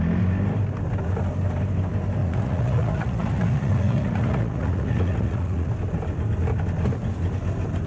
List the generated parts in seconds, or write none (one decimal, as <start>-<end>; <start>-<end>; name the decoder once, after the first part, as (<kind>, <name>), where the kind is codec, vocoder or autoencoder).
2.2-5.7 (vocoder, Vocos)